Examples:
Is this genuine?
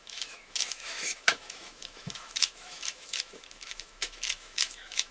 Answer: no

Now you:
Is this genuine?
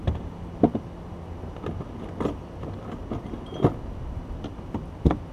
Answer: yes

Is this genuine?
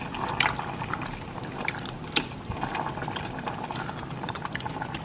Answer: yes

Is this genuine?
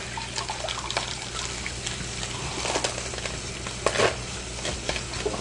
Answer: yes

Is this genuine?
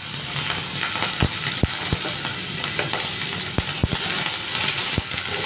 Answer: yes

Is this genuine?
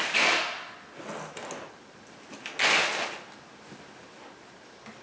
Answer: yes